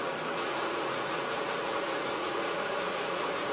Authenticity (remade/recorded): remade